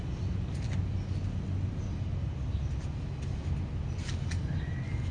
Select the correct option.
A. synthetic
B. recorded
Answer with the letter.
B